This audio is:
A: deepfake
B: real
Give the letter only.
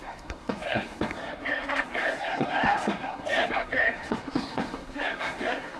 A